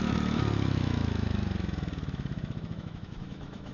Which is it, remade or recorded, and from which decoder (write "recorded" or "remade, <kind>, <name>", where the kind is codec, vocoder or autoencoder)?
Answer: remade, autoencoder, DAC-VAE